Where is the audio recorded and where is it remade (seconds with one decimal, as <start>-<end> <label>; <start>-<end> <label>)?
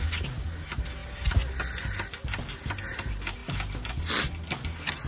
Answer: 0.0-5.1 recorded